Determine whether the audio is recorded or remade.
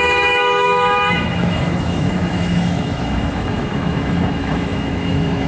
remade